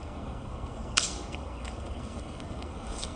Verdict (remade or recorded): remade